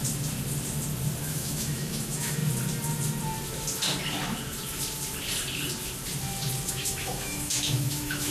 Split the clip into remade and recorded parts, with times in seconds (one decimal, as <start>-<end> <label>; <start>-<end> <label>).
0.0-1.2 recorded; 1.2-2.4 remade; 2.4-6.7 recorded; 6.7-8.3 remade